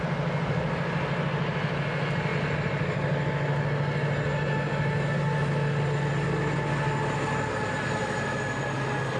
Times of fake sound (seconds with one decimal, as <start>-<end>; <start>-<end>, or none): none